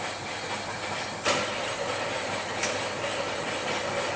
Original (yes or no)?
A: yes